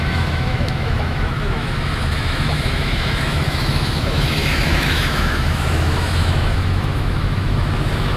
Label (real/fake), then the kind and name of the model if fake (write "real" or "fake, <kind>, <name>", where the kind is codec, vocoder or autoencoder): fake, autoencoder, DAC-VAE